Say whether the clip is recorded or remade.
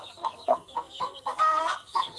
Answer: remade